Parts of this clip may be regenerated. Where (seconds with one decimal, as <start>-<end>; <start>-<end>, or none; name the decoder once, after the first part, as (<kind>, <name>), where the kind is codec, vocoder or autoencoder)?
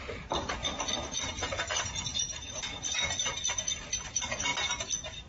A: none